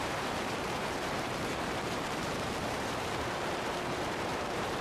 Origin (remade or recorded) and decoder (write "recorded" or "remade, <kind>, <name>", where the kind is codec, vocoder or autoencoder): remade, vocoder, BigVGAN v2